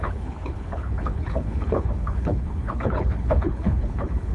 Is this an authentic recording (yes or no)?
no